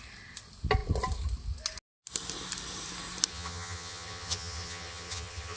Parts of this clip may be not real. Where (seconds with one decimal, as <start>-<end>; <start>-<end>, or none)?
3.3-5.6